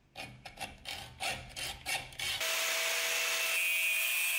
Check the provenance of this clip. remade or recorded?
recorded